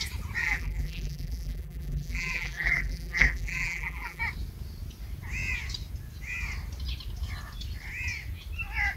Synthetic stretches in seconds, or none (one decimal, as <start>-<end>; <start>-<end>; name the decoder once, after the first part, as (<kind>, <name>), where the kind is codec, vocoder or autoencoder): 0.4-4.2 (vocoder, BigVGAN v2)